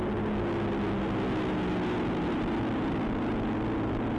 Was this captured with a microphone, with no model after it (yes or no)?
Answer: yes